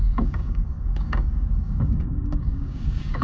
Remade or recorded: remade